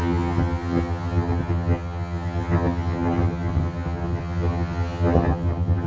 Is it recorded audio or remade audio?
remade